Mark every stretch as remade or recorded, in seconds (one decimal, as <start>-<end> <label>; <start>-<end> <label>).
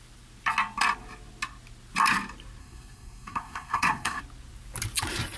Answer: 0.0-2.6 recorded; 2.6-4.2 remade; 4.2-5.4 recorded